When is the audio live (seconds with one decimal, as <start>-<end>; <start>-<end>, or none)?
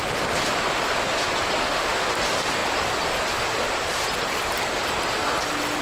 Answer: 0.0-1.6; 2.1-5.8